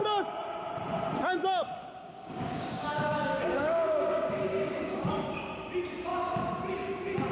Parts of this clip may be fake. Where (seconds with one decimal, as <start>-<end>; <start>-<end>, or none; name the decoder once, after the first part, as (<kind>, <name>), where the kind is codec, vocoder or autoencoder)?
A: 1.8-5.1 (codec, DAC)